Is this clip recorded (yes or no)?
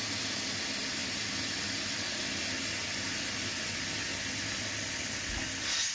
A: yes